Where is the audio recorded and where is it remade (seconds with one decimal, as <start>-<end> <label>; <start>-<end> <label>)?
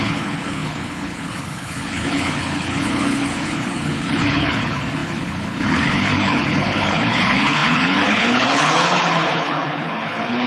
0.0-10.5 remade